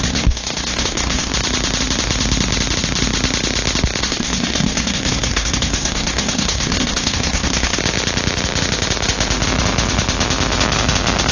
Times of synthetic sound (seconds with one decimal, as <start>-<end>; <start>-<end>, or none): 0.0-1.3; 4.0-7.8